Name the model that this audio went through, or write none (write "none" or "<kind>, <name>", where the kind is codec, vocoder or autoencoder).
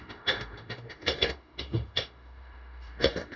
autoencoder, DAC-VAE